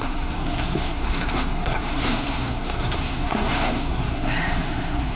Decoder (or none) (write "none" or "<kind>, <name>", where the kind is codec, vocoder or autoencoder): codec, SNAC